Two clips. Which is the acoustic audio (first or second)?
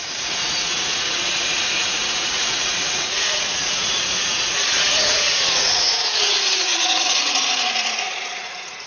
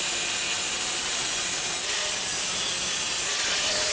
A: second